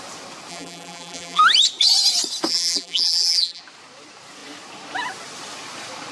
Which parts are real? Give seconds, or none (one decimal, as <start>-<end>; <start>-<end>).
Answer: 0.0-0.5; 1.4-2.5; 3.6-6.1